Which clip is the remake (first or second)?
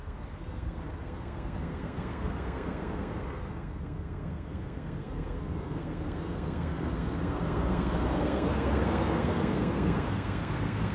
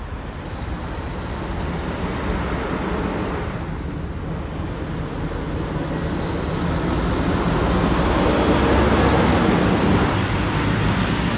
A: first